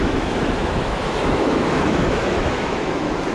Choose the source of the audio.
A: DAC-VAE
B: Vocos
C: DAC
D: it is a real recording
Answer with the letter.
A